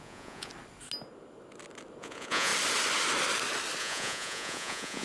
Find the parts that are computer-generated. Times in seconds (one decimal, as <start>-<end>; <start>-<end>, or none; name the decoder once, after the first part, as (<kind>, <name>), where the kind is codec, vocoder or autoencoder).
0.0-0.5 (vocoder, Vocos); 2.0-2.5; 3.8-5.0